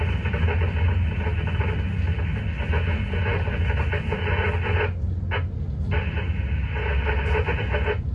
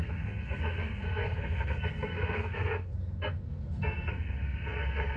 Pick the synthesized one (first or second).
second